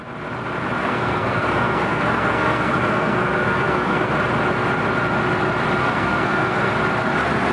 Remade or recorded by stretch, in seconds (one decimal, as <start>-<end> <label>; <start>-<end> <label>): 0.0-0.8 recorded; 0.8-4.1 remade; 4.1-5.8 recorded; 5.8-6.7 remade; 6.7-7.5 recorded